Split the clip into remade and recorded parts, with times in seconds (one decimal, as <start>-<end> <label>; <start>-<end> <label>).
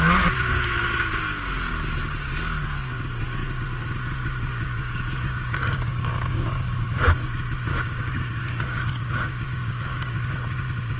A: 0.0-2.0 recorded; 2.0-2.6 remade; 2.6-4.5 recorded; 4.5-7.1 remade; 7.1-7.7 recorded; 7.7-10.3 remade; 10.3-11.0 recorded